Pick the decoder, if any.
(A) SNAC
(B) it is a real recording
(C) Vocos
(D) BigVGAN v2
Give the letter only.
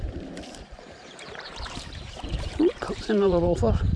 D